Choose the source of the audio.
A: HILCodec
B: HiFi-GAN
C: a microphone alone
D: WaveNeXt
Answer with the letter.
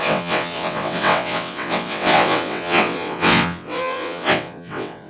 D